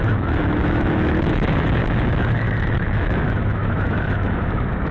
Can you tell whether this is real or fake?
fake